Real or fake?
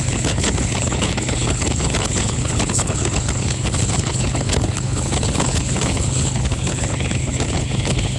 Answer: fake